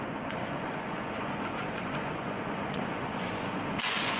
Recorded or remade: remade